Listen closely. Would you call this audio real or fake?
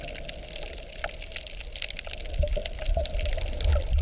real